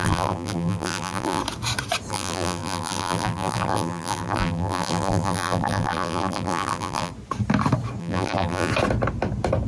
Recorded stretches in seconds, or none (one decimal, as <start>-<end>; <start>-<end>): 1.4-2.1; 7.1-8.0; 8.7-9.7